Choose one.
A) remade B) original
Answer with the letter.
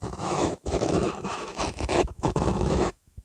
A